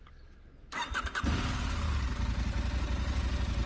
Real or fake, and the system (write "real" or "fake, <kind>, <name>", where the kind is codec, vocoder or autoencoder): real